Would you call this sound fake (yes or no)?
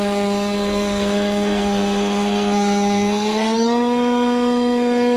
yes